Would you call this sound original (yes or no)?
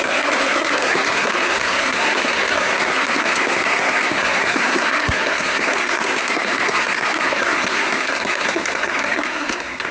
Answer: no